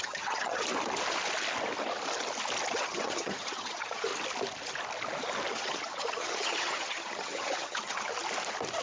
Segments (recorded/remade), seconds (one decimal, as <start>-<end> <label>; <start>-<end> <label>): 0.0-0.6 remade; 0.6-2.7 recorded; 2.7-4.1 remade; 4.1-5.5 recorded; 5.5-8.1 remade; 8.1-8.8 recorded